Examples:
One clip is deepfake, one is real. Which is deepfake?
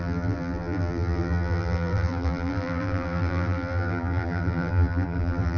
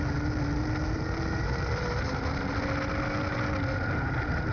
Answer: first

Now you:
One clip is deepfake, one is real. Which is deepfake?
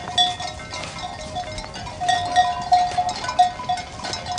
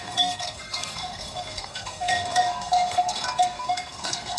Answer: second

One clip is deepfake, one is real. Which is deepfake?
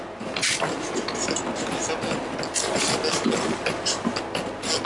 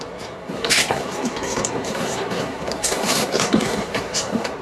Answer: second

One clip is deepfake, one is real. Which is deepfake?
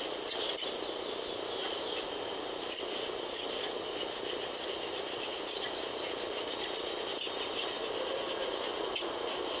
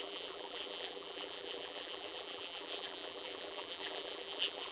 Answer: second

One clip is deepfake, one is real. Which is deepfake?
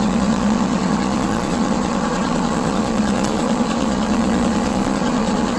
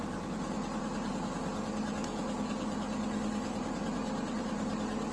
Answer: first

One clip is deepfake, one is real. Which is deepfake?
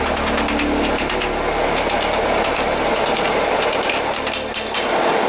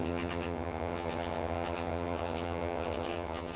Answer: second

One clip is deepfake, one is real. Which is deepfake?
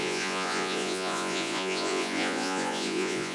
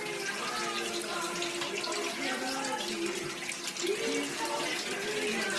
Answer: first